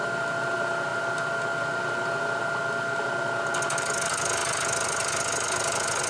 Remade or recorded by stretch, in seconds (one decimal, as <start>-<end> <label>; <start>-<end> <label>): 0.0-6.1 recorded